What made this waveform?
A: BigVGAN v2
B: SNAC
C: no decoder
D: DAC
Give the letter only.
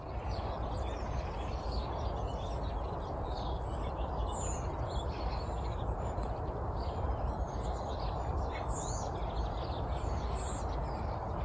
C